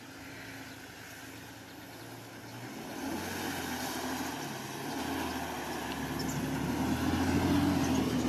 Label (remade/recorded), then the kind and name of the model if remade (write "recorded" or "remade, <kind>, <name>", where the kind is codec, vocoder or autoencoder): recorded